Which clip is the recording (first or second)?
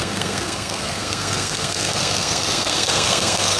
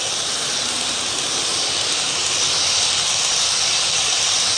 second